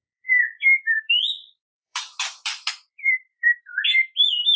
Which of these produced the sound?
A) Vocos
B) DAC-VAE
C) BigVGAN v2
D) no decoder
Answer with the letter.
C